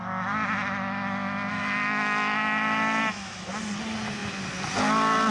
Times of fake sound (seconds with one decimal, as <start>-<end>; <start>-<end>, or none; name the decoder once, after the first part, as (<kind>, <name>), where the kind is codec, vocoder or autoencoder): 1.5-3.5 (autoencoder, DAC-VAE)